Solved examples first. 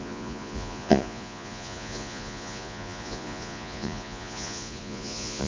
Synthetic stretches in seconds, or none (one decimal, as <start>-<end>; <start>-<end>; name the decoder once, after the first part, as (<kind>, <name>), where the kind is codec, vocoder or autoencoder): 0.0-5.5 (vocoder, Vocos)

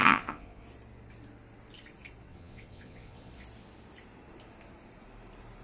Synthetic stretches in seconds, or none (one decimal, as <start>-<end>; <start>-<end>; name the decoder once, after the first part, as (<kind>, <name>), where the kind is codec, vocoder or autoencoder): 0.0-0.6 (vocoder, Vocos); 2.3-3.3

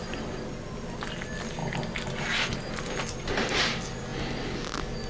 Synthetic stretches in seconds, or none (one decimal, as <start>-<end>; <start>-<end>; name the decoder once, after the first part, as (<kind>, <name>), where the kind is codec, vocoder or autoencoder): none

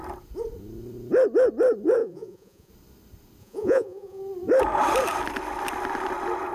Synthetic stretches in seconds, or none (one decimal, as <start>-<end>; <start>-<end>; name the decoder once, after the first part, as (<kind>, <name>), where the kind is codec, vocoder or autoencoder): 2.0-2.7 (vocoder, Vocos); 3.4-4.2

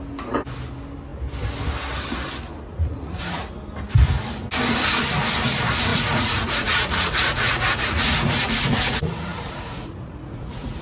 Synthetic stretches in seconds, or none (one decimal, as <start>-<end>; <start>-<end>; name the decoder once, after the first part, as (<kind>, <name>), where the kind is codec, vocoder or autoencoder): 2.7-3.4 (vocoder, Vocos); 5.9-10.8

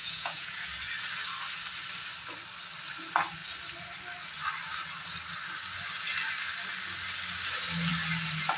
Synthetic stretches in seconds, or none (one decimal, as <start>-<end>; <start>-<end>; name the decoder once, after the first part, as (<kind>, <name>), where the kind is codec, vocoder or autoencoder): 0.0-0.6 (vocoder, Vocos)

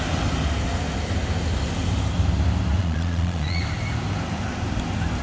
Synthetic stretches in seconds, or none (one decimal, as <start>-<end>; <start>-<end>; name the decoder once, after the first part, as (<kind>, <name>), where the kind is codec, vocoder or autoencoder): 2.8-3.6 (vocoder, Vocos)

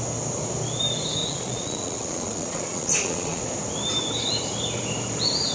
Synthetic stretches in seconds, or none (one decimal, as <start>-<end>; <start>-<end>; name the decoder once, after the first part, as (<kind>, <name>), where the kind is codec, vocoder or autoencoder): 1.2-3.4 (vocoder, Vocos)